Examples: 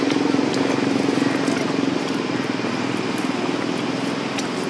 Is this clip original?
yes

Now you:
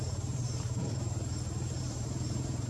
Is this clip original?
no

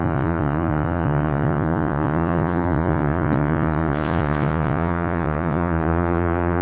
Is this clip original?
no